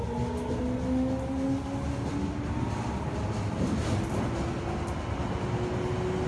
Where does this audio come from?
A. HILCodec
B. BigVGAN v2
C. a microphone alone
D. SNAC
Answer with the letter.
C